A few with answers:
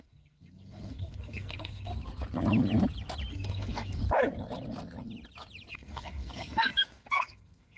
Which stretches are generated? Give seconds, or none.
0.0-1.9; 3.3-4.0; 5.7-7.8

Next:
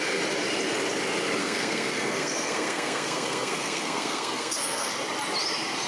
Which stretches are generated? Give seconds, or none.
1.4-4.9

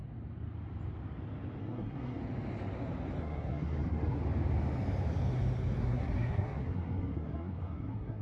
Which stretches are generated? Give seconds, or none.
1.6-2.2; 3.2-4.2; 5.8-8.2

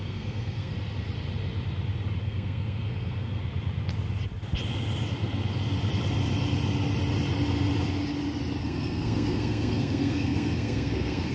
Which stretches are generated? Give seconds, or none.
0.0-0.7; 2.2-3.4; 8.6-11.3

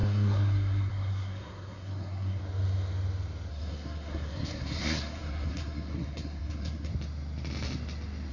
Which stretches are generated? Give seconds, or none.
0.0-2.4; 3.5-6.9